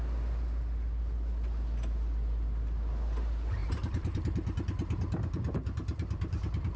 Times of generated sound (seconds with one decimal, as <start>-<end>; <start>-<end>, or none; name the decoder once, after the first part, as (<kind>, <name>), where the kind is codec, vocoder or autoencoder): 3.6-6.8 (vocoder, BigVGAN v2)